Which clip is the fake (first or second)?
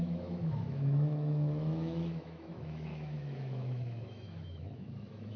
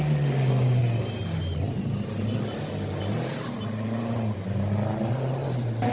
first